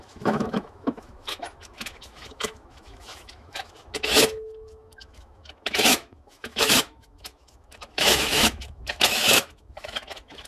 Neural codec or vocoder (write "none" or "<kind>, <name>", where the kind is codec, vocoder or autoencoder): autoencoder, DAC-VAE